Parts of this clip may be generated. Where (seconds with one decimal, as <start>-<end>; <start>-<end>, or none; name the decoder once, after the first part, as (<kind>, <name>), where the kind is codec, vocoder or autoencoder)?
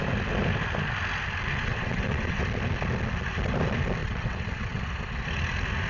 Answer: 1.5-2.4 (vocoder, WaveNeXt); 4.0-4.8